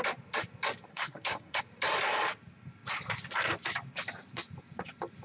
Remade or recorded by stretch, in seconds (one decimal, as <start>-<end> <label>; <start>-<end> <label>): 0.0-0.9 recorded; 0.9-1.6 remade; 1.6-5.2 recorded